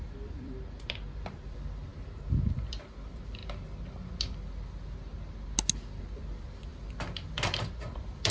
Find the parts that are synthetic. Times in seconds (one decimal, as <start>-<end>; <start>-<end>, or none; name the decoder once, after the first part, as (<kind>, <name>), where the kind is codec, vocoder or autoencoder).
0.0-3.4 (vocoder, BigVGAN v2); 6.0-8.3